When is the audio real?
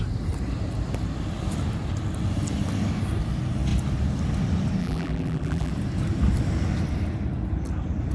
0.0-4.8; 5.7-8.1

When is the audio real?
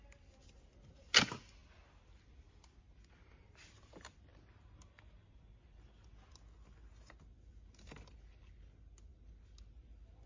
0.0-10.3